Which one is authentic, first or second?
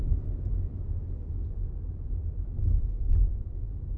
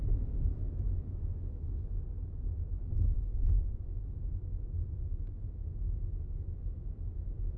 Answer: first